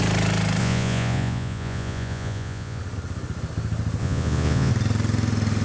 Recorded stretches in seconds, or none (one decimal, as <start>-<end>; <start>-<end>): 0.0-0.6; 2.8-4.0; 4.7-5.6

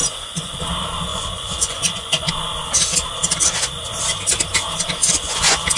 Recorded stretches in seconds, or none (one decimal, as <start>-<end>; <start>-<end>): 0.6-1.1; 2.3-5.0

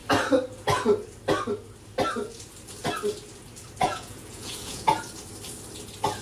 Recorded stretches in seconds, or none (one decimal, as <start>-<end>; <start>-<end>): 0.0-3.8; 5.0-6.2

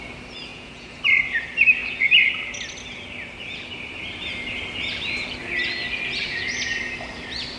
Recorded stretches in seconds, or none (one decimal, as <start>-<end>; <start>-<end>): 0.0-0.5; 1.0-7.6

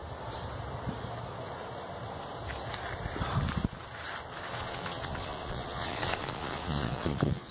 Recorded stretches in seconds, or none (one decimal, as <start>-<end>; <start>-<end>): 0.0-4.5

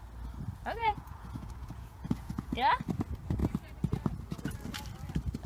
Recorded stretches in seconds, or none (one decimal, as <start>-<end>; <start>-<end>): 0.0-0.8; 2.5-5.5